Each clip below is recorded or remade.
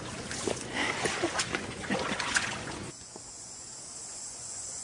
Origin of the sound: remade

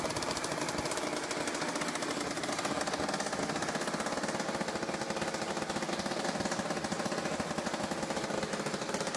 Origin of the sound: recorded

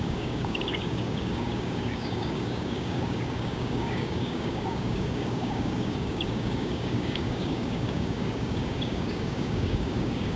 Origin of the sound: remade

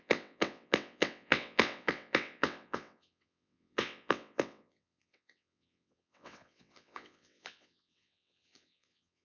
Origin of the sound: remade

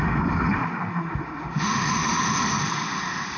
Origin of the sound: remade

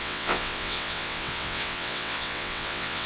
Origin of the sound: remade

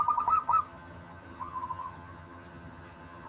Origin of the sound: remade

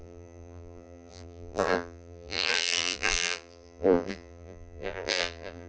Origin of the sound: remade